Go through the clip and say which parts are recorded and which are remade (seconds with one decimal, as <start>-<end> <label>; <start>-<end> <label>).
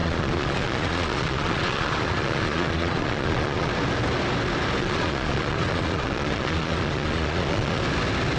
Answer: 0.0-3.7 remade; 3.7-4.8 recorded; 4.8-7.8 remade; 7.8-8.4 recorded